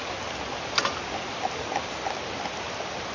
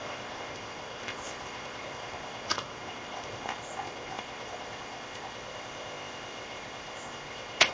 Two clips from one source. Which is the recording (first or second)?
first